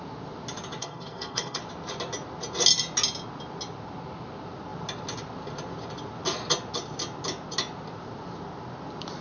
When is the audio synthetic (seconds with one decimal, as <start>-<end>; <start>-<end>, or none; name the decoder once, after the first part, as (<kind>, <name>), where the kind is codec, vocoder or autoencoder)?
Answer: 0.8-1.6 (codec, SNAC)